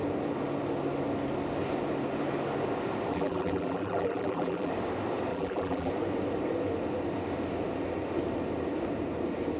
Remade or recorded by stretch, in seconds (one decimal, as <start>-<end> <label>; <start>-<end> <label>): 0.0-3.1 recorded; 3.1-4.7 remade; 4.7-5.3 recorded; 5.3-5.9 remade; 5.9-9.6 recorded